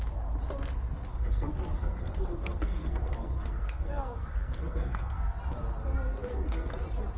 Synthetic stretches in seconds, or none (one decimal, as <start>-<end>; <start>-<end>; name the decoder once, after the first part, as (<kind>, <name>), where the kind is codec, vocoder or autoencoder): 1.1-5.4 (codec, SNAC); 6.1-6.7